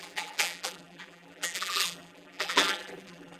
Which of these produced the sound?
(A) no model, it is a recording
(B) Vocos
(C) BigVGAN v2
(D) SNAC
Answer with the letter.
C